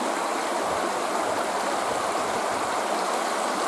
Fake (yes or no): no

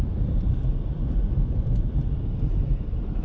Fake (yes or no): no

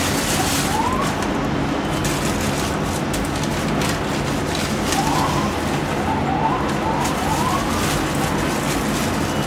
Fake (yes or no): no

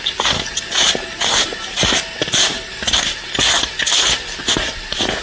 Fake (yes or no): no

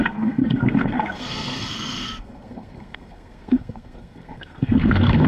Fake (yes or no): yes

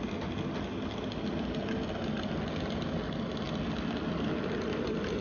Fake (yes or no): no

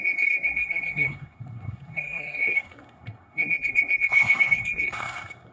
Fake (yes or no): yes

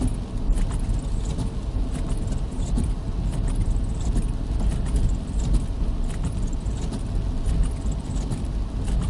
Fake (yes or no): no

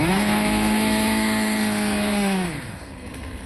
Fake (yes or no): yes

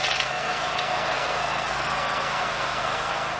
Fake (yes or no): yes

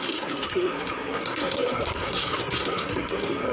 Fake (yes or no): yes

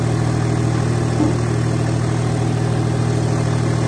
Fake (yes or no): no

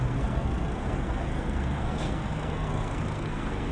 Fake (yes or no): yes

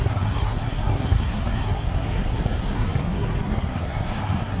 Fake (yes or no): yes